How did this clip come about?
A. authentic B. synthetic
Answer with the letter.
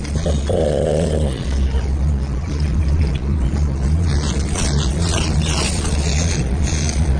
B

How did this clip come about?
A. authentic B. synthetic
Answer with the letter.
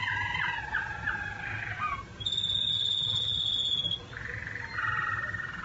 A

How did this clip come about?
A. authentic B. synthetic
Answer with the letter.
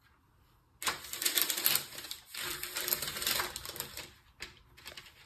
A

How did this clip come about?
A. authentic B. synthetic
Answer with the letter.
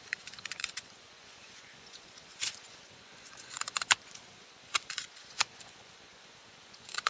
B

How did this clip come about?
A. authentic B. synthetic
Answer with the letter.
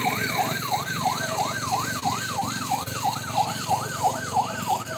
A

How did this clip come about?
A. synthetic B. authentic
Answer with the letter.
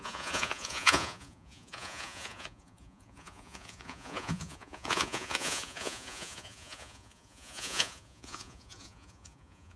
A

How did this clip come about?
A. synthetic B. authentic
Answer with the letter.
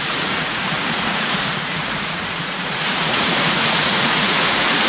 A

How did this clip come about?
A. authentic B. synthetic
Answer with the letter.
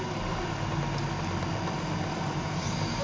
A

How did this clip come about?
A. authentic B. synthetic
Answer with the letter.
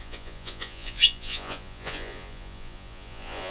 B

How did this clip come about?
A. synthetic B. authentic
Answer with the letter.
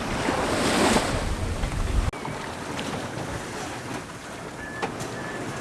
B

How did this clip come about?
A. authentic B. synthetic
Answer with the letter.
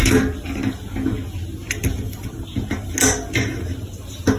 A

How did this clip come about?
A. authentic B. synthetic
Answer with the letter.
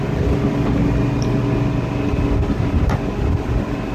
A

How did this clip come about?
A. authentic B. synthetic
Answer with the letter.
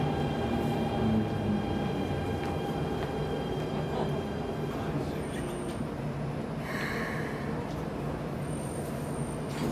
A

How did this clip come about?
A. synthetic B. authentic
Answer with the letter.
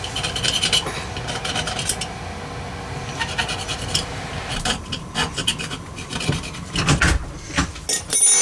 B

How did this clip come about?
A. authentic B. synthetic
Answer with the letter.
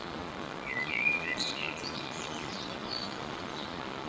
B